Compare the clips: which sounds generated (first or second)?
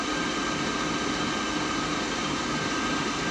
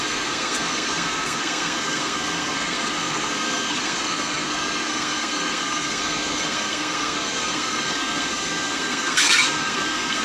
second